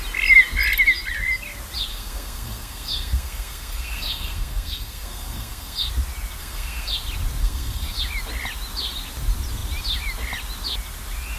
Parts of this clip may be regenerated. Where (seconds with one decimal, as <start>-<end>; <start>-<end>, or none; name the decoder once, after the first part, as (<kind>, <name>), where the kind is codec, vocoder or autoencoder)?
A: 1.9-5.9 (codec, SNAC); 6.4-6.9; 7.4-8.0